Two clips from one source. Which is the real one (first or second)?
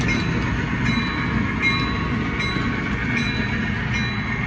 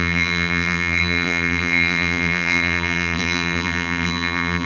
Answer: first